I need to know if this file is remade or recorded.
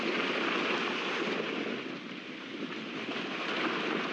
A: recorded